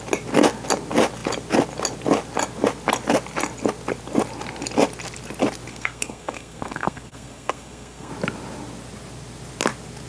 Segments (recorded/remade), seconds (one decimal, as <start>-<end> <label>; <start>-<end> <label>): 0.0-5.7 recorded; 5.7-8.1 remade; 8.1-10.1 recorded